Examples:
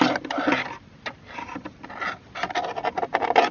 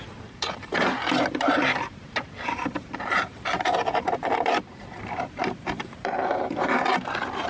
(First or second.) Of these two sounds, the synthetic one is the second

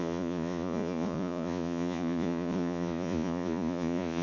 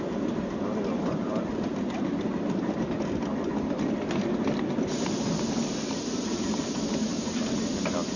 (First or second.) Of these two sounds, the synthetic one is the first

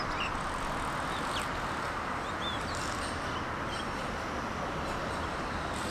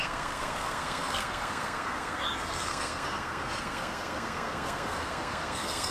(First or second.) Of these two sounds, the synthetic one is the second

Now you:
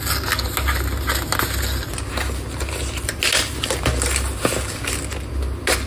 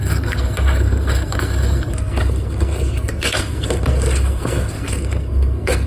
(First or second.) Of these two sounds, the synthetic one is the second